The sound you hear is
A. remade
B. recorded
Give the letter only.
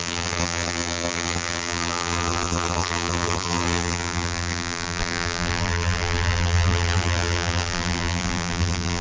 A